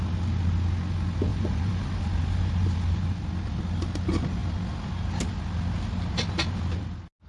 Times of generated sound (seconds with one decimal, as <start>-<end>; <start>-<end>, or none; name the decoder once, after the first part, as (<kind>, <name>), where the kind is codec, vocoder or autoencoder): 1.3-1.8 (vocoder, Vocos)